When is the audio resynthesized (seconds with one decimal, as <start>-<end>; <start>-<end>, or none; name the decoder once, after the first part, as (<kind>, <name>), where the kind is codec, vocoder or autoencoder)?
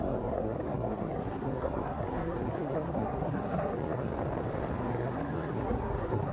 0.0-4.1 (codec, SNAC); 4.8-6.3